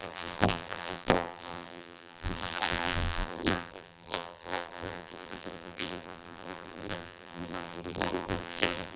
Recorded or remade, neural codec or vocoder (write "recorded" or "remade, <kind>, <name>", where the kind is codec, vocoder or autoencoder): remade, vocoder, BigVGAN v2